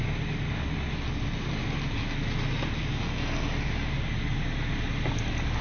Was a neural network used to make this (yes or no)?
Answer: no